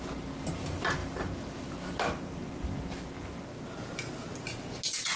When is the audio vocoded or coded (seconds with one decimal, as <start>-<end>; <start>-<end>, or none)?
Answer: none